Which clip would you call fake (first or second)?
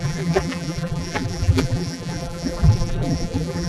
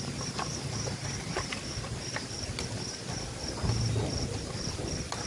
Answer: first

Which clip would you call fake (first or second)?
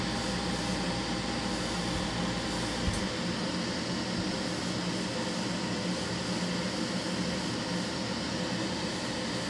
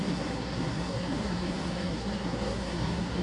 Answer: second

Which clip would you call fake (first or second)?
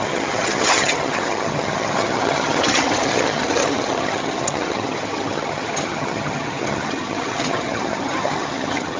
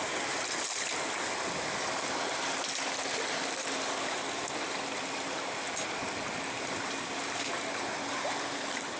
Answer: first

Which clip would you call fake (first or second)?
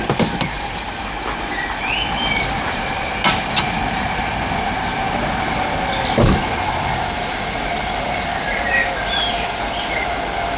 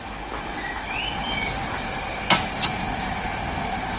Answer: first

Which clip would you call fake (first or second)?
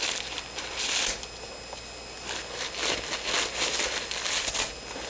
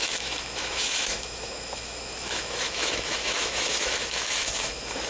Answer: second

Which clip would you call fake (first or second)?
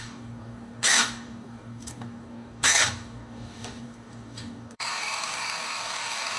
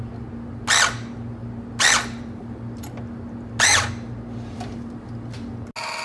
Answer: first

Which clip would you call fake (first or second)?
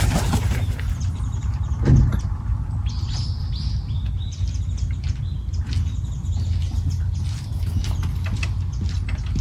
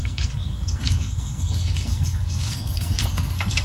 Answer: second